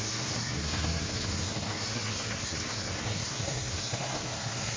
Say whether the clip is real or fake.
fake